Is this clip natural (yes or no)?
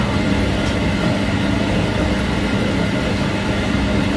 yes